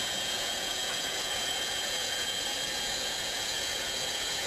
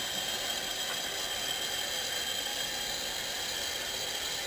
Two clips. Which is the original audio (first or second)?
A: second